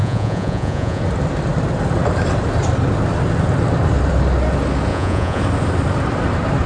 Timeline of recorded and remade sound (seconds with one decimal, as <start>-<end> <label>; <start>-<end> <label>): 0.0-1.0 remade; 1.0-4.9 recorded; 4.9-5.4 remade; 5.4-6.7 recorded